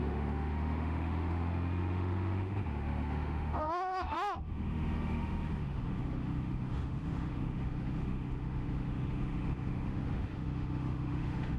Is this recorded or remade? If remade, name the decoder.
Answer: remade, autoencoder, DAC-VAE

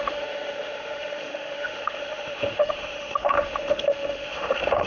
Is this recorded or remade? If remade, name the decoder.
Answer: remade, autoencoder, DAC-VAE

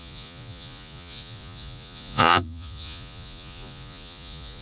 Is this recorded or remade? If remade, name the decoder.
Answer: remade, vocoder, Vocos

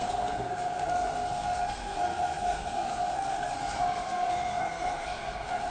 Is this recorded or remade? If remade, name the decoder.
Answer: remade, codec, SNAC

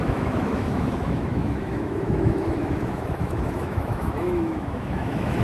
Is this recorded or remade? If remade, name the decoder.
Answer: remade, autoencoder, DAC-VAE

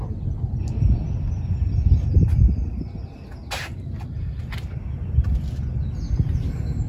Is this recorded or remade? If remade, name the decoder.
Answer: recorded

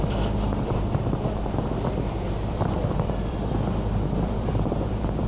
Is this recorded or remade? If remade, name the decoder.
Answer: remade, vocoder, BigVGAN v2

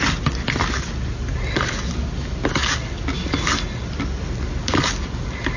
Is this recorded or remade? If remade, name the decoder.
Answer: recorded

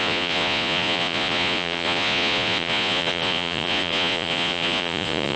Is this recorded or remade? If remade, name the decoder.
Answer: remade, vocoder, Vocos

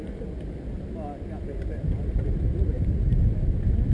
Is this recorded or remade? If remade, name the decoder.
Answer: recorded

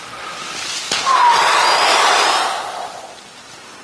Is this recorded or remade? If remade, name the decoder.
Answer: recorded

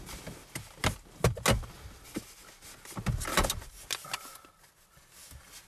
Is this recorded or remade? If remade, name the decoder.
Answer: recorded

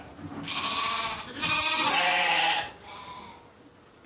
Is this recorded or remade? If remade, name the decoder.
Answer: recorded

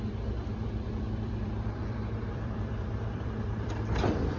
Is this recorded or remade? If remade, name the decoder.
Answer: remade, vocoder, BigVGAN v2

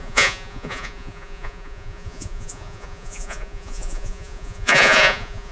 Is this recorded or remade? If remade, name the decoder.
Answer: remade, vocoder, Vocos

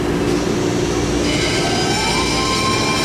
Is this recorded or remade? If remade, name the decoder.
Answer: recorded